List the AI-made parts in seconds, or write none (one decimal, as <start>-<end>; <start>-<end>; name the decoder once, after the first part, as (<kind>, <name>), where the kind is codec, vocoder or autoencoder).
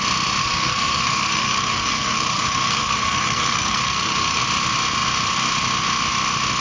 0.4-4.4 (codec, SNAC)